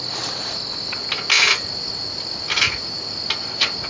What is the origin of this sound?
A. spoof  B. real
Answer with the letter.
B